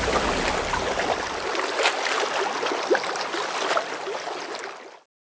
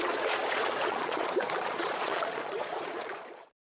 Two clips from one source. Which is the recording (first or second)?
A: first